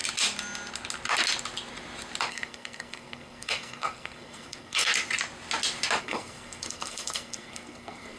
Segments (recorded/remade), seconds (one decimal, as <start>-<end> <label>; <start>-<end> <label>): 0.0-2.3 recorded; 2.3-4.9 remade; 4.9-6.0 recorded; 6.0-8.2 remade